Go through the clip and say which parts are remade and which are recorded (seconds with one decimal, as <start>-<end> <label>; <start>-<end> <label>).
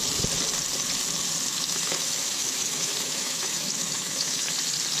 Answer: 0.0-1.5 recorded; 1.5-4.5 remade; 4.5-5.0 recorded